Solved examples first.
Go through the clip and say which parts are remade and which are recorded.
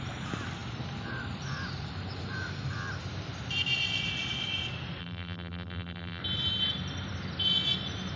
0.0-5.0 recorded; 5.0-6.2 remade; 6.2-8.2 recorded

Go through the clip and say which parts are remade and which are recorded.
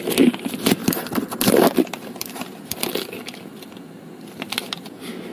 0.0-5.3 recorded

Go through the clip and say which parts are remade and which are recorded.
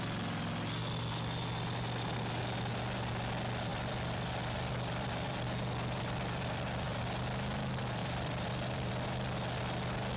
0.0-3.7 recorded; 3.7-7.0 remade; 7.0-8.0 recorded; 8.0-8.9 remade; 8.9-10.2 recorded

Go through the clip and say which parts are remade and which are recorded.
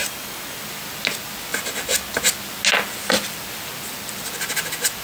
0.0-0.6 remade; 0.6-5.0 recorded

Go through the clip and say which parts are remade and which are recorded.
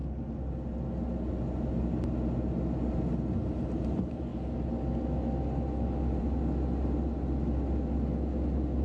0.0-8.8 recorded